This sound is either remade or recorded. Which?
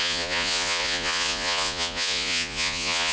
remade